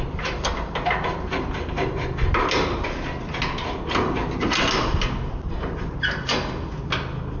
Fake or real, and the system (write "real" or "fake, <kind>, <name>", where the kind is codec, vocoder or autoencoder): real